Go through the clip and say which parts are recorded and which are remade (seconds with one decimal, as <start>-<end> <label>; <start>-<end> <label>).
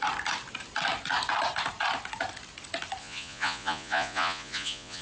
0.0-3.0 recorded; 3.0-5.0 remade